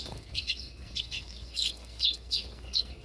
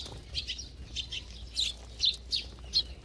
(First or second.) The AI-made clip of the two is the first